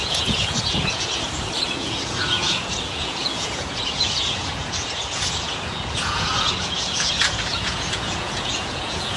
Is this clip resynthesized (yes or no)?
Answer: yes